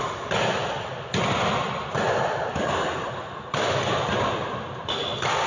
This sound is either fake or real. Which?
real